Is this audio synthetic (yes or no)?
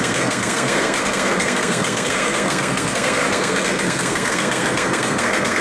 yes